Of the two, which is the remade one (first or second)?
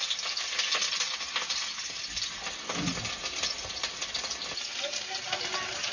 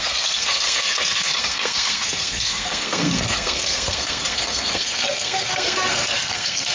second